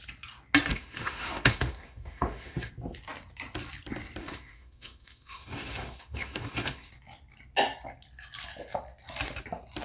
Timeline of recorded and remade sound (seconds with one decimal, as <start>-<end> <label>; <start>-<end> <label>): 0.0-0.7 recorded; 0.7-2.7 remade; 2.7-4.2 recorded; 4.2-6.9 remade; 6.9-9.8 recorded